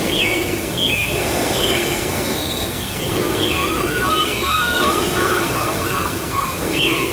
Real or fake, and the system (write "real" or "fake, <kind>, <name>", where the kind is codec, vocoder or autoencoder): fake, codec, SNAC